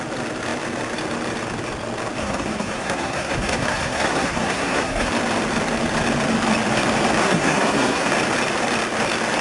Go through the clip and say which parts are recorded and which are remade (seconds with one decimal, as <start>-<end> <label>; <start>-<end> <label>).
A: 0.0-2.2 recorded; 2.2-5.1 remade; 5.1-7.2 recorded; 7.2-8.1 remade; 8.1-9.4 recorded